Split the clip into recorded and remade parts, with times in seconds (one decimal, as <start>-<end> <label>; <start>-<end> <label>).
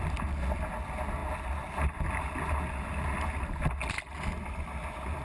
0.0-5.2 recorded